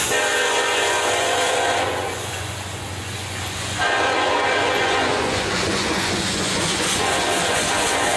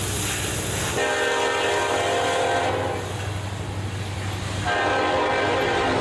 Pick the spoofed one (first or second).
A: first